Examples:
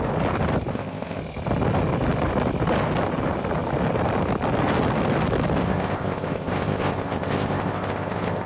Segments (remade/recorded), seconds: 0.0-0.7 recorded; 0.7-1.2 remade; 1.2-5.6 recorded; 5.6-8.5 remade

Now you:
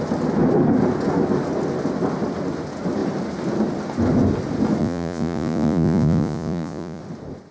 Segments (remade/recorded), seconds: 0.0-4.8 recorded; 4.8-7.0 remade; 7.0-7.5 recorded

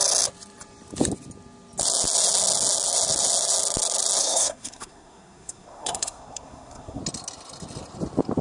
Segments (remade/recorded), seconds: 0.0-4.2 recorded; 4.2-7.0 remade; 7.0-8.4 recorded

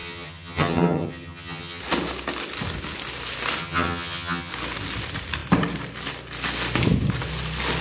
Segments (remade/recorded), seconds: 0.0-1.8 remade; 1.8-3.6 recorded; 3.6-4.5 remade; 4.5-7.8 recorded

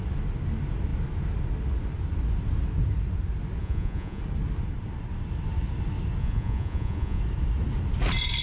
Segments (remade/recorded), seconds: 0.0-3.6 recorded; 3.6-4.2 remade; 4.2-6.2 recorded; 6.2-7.2 remade; 7.2-8.4 recorded